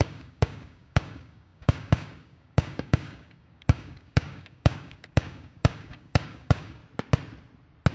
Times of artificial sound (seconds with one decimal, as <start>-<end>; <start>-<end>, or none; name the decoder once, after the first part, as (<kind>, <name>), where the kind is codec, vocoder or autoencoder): 0.0-6.8 (codec, DAC)